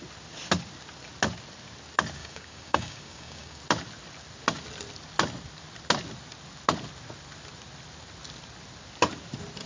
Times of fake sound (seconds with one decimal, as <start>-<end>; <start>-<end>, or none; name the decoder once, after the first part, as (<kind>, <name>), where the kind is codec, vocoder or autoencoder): 2.2-3.6 (codec, DAC)